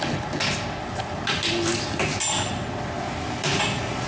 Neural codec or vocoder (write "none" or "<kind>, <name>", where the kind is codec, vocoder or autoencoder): none